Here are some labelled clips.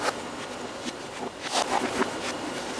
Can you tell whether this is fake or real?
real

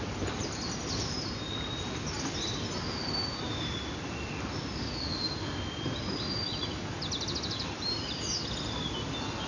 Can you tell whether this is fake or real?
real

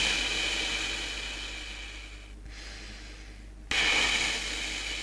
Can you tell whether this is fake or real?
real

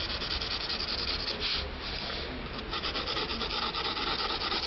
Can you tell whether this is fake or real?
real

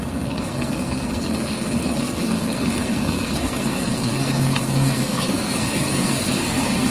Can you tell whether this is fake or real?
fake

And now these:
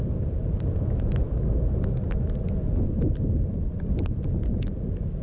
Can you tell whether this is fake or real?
real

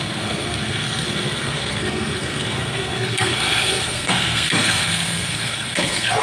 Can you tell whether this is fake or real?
fake